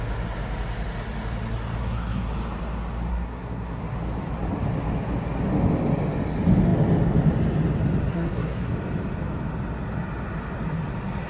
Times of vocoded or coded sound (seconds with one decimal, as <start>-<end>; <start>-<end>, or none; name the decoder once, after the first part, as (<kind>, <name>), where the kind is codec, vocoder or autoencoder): 1.8-2.3 (codec, SNAC); 3.1-3.8; 8.1-8.7